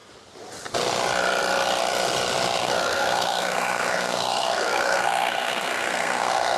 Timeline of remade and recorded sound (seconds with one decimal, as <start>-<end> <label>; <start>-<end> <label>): 0.0-2.6 recorded; 2.6-6.6 remade